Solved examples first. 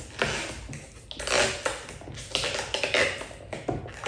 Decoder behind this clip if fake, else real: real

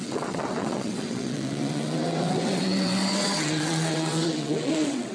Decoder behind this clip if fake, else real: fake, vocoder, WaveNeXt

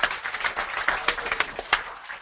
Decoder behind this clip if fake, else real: real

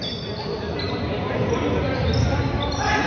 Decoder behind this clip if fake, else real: real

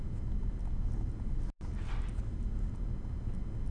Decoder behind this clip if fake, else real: real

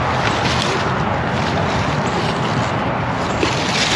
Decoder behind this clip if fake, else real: real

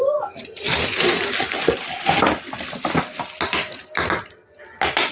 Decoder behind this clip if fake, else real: real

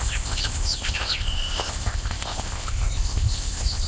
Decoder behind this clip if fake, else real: fake, codec, ZipCodec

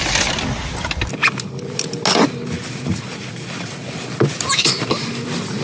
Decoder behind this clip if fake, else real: real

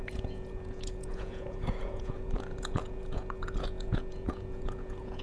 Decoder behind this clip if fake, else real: fake, vocoder, Vocos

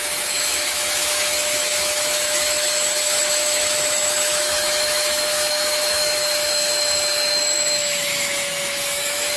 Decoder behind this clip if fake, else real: fake, autoencoder, DAC-VAE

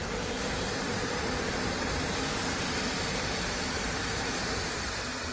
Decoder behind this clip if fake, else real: real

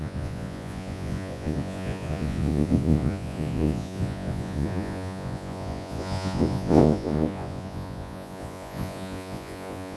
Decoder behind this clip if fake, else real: fake, vocoder, Vocos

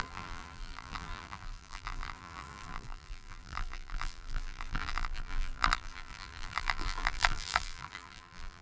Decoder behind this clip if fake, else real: fake, vocoder, BigVGAN v2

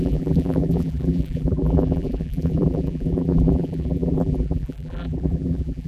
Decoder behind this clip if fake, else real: fake, vocoder, BigVGAN v2